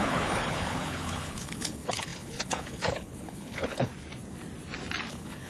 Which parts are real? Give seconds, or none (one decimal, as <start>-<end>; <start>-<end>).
3.9-5.1